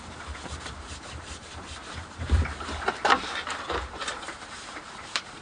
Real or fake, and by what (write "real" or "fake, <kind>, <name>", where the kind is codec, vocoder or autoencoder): fake, vocoder, BigVGAN v2